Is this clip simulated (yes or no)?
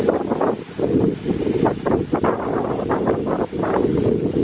yes